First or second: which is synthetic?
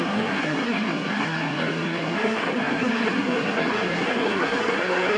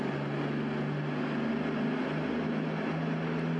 first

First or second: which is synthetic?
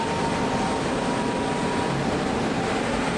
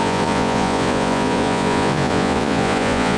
second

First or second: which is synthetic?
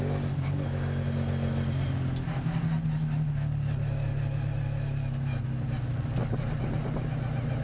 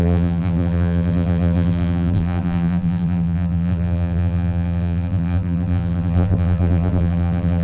second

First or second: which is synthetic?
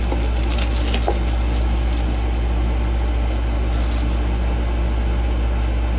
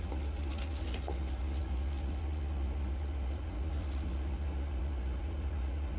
second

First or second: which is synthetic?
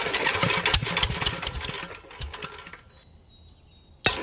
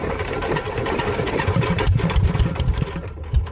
second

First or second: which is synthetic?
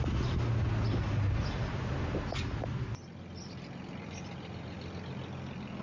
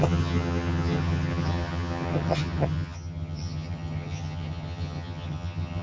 second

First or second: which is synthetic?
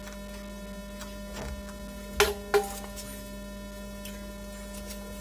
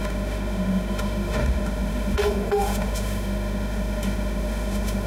second